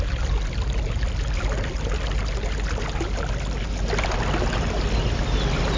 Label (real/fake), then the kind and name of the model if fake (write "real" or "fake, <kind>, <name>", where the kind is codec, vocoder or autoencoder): real